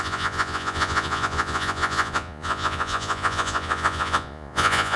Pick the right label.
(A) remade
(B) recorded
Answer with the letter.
A